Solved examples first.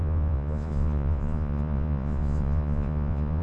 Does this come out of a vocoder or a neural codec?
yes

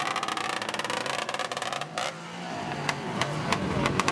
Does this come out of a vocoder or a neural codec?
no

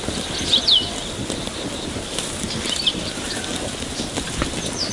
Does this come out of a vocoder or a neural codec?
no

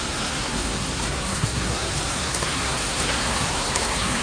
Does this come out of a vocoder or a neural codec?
yes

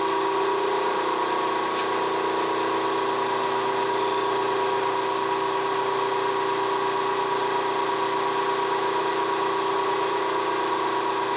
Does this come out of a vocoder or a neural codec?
no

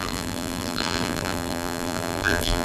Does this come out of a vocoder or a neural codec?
yes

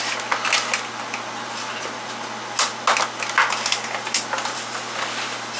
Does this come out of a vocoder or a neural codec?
no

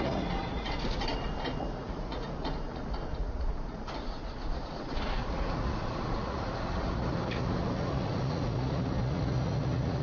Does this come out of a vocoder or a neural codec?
yes